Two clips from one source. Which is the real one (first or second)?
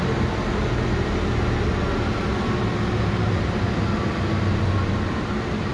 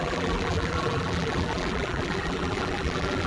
first